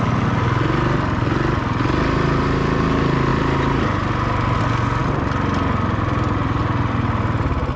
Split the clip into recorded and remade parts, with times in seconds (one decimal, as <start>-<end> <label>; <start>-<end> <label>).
0.0-7.8 recorded

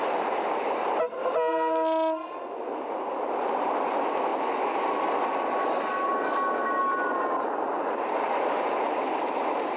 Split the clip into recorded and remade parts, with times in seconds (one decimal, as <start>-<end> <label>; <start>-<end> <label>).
0.0-9.8 recorded

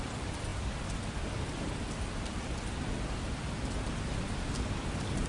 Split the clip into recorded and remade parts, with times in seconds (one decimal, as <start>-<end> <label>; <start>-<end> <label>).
0.0-5.3 recorded

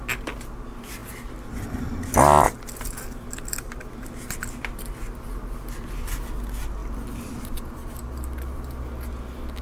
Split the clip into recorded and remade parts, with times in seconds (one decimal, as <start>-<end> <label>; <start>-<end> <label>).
0.0-9.6 recorded

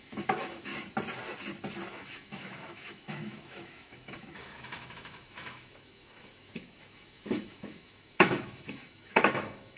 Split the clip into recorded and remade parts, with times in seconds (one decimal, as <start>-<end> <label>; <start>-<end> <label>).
0.0-0.7 remade; 0.7-1.9 recorded; 1.9-9.8 remade